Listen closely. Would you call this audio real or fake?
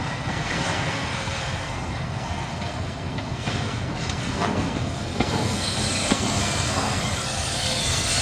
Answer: fake